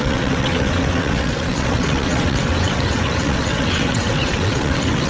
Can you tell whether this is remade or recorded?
remade